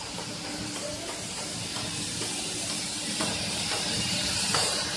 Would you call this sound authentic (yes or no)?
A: no